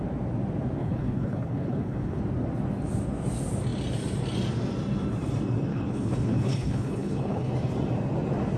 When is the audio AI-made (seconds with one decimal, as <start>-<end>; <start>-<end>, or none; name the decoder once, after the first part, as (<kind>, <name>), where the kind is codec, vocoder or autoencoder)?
0.8-2.2 (codec, HILCodec); 5.7-7.5